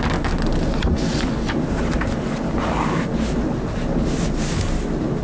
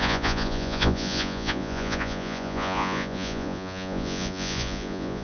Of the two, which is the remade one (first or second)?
second